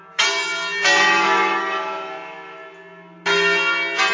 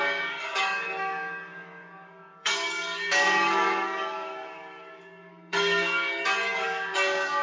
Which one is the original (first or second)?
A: first